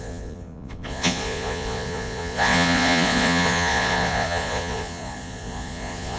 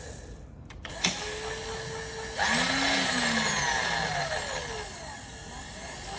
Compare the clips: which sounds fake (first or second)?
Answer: first